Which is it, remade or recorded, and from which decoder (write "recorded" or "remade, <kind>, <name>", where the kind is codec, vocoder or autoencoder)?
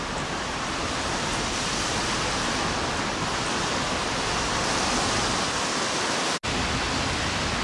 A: recorded